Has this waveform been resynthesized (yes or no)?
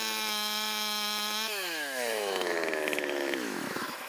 yes